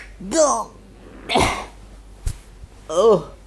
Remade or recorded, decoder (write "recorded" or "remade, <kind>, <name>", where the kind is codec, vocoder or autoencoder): recorded